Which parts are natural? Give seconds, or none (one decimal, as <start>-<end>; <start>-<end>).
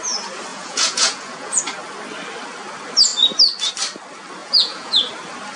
0.0-0.5; 1.6-4.4; 5.1-5.6